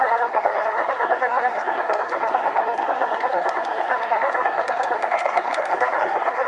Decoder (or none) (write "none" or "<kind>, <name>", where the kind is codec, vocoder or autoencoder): codec, SNAC